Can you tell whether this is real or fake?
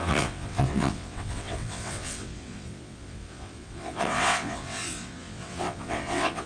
fake